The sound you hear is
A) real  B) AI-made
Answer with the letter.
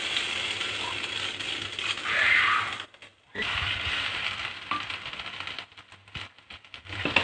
A